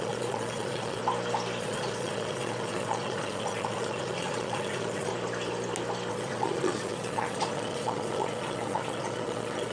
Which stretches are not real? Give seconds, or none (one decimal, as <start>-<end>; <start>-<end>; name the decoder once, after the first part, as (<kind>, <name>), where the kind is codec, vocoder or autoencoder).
0.0-1.0 (vocoder, Vocos); 1.6-5.1; 6.1-9.7